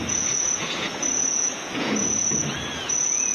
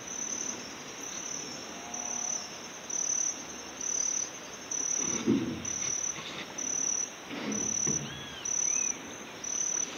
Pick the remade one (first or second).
first